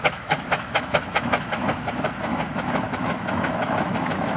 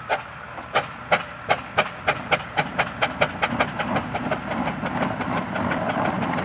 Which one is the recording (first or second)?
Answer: second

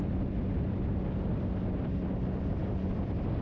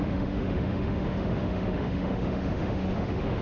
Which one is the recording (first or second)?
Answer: first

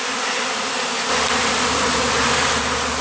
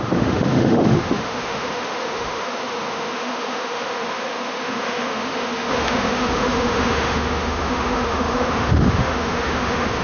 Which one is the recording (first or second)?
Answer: first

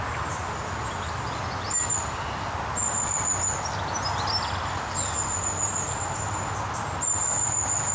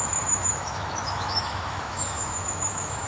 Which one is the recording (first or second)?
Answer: first